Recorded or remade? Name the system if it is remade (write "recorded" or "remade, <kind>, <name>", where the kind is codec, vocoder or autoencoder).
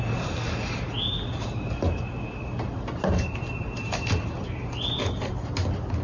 recorded